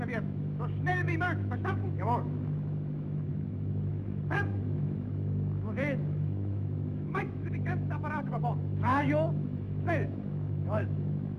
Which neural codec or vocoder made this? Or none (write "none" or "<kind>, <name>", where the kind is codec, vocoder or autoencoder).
autoencoder, DAC-VAE